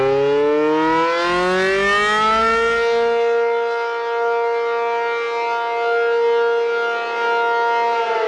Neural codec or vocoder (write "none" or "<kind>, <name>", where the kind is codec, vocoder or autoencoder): none